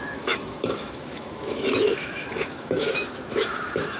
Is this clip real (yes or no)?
no